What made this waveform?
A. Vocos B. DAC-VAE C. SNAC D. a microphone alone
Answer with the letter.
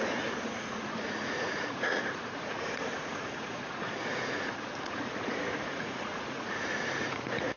A